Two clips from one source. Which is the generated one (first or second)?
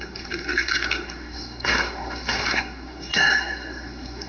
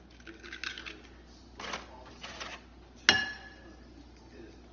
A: first